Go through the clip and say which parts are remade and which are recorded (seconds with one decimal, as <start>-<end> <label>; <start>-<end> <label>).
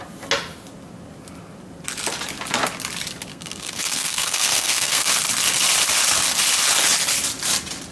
0.0-3.3 recorded; 3.3-5.1 remade; 5.1-7.9 recorded